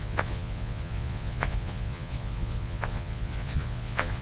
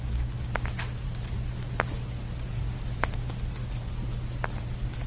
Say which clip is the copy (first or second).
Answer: first